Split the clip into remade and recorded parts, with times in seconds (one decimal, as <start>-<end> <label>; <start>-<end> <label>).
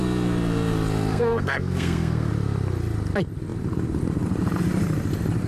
0.0-1.1 recorded; 1.1-2.3 remade; 2.3-5.5 recorded